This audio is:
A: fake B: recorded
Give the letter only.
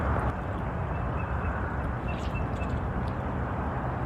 B